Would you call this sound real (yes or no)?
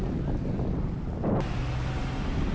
yes